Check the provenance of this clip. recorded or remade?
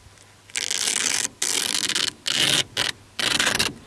recorded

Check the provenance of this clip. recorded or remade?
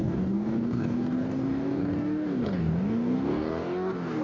remade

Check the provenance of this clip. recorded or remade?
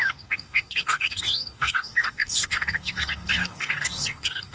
remade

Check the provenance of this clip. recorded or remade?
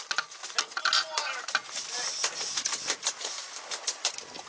recorded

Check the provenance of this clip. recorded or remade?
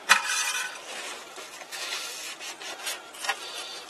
recorded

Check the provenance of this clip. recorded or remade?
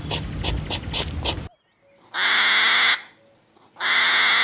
recorded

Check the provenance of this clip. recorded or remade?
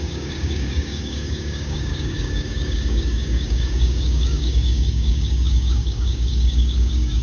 remade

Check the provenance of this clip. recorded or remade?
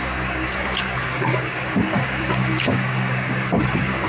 remade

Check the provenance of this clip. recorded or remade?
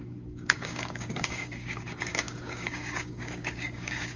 remade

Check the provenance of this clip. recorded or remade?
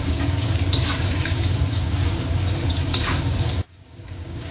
remade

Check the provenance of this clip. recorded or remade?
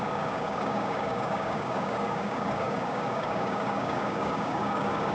remade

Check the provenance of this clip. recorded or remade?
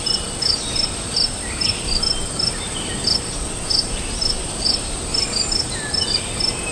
recorded